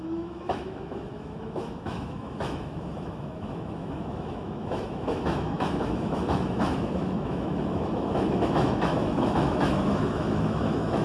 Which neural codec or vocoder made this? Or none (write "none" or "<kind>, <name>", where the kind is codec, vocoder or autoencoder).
autoencoder, DAC-VAE